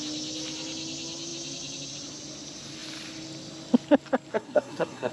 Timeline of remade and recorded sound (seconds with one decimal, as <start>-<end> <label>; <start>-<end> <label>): 0.0-4.3 recorded; 4.3-5.1 remade